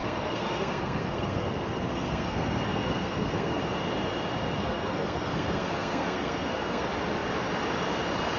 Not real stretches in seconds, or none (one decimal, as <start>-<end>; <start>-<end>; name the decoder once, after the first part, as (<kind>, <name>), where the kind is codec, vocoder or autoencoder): 0.0-3.6 (codec, SNAC); 4.6-6.8